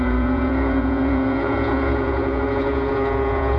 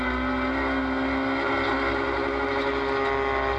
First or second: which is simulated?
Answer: first